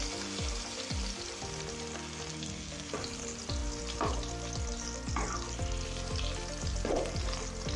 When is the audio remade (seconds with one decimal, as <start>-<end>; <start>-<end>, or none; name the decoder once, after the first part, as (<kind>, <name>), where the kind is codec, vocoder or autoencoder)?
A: 2.3-2.9 (codec, SNAC)